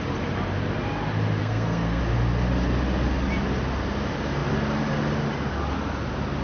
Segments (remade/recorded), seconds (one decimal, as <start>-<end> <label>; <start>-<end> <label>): 0.0-1.4 recorded; 1.4-2.0 remade; 2.0-6.4 recorded